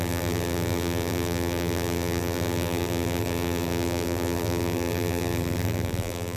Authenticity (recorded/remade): remade